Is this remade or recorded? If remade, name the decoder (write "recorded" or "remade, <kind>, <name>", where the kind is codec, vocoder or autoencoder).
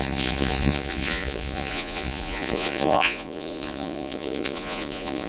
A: remade, vocoder, Vocos